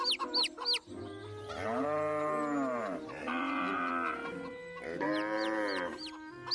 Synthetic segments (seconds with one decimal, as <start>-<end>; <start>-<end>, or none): 3.2-3.9